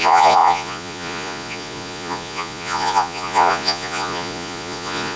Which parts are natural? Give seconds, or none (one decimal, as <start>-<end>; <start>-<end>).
none